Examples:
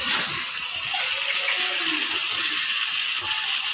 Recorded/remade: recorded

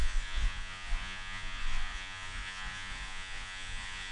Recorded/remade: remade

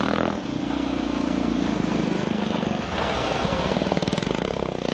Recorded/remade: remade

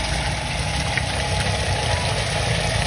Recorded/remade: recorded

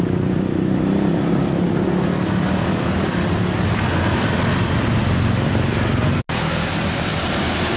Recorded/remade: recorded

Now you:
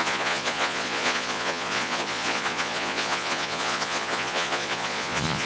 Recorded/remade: remade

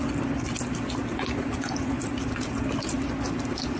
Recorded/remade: recorded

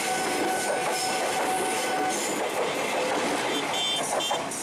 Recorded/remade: recorded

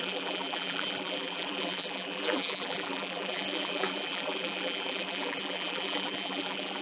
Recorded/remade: remade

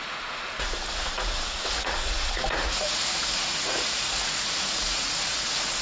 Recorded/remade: remade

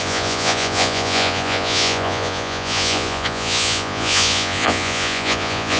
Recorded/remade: remade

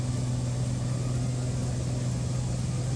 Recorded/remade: recorded